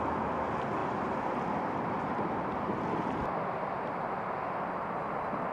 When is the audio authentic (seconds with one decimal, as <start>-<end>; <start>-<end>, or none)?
0.0-5.5